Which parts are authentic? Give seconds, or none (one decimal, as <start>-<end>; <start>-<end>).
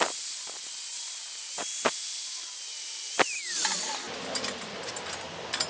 0.0-5.7